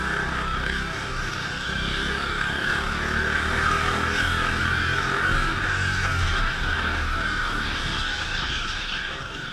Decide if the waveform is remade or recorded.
remade